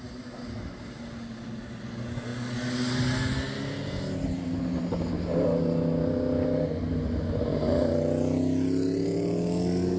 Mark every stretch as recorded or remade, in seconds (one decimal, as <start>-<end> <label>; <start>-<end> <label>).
0.0-10.0 recorded